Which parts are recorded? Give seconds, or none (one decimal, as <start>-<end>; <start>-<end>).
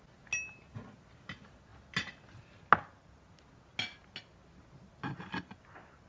0.0-6.1